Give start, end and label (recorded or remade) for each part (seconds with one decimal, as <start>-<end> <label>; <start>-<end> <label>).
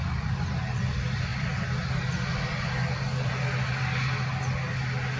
0.0-1.3 remade; 1.3-4.4 recorded; 4.4-5.2 remade